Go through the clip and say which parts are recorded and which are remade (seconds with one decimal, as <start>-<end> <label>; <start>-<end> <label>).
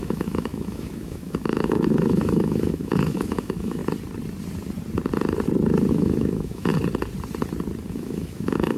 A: 0.0-3.8 remade; 3.8-5.9 recorded; 5.9-6.7 remade; 6.7-7.9 recorded; 7.9-8.8 remade